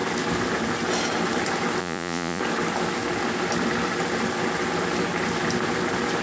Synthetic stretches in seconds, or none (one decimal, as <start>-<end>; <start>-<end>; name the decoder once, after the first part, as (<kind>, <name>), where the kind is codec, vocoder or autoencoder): 1.8-2.4 (vocoder, Vocos)